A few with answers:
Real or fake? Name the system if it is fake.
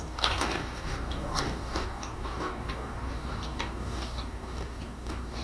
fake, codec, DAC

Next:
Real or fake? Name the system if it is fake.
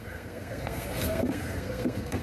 fake, codec, SNAC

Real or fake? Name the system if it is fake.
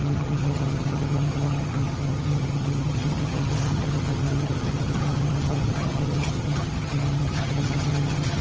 fake, vocoder, HiFi-GAN